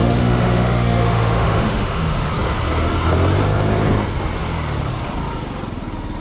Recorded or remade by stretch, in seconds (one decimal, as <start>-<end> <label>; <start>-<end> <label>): 0.0-2.3 remade; 2.3-6.2 recorded